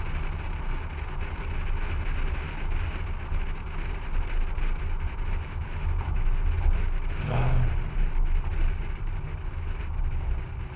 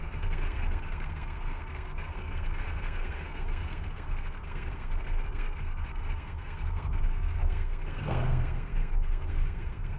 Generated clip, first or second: second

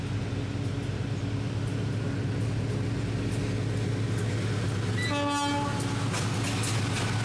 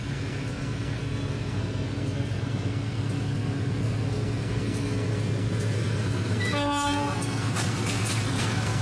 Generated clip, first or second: second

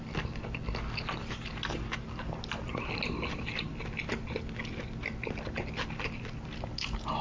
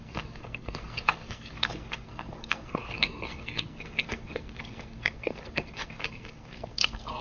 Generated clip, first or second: second